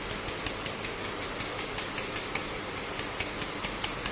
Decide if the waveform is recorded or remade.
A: recorded